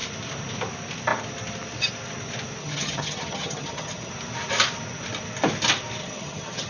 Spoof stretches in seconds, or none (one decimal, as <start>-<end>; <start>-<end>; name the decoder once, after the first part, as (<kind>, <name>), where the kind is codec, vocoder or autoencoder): 2.6-4.1 (vocoder, HiFi-GAN); 6.0-6.7